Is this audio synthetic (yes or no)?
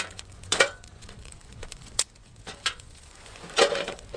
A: yes